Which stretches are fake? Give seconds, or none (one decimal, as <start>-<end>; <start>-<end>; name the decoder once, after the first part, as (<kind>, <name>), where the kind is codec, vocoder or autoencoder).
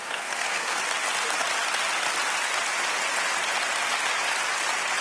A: 0.0-0.8 (codec, SNAC)